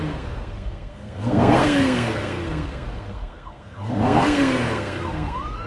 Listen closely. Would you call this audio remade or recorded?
remade